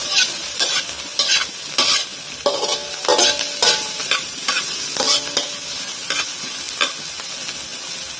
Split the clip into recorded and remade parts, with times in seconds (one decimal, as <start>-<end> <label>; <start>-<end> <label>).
0.0-0.8 remade; 0.8-4.0 recorded; 4.0-4.9 remade; 4.9-8.2 recorded